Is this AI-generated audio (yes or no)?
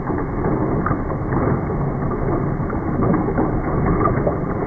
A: no